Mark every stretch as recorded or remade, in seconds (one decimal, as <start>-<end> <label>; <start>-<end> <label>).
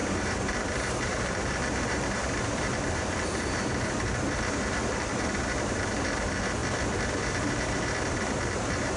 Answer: 0.0-6.6 remade; 6.6-7.1 recorded; 7.1-9.0 remade